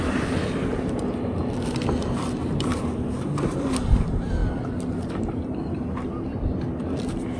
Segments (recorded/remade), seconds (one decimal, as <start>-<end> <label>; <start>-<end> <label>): 0.0-7.4 recorded